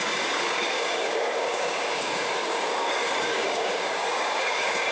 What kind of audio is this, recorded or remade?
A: remade